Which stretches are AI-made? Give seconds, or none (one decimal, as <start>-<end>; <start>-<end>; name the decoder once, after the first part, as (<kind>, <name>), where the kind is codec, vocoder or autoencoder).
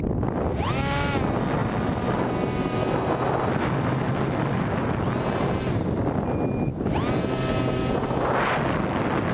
none